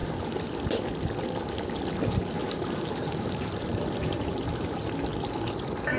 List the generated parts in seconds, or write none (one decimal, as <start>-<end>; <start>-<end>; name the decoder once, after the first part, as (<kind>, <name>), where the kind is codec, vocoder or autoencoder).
2.4-4.5 (vocoder, BigVGAN v2)